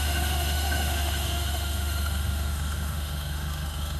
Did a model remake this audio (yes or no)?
yes